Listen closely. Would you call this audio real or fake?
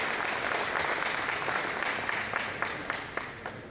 real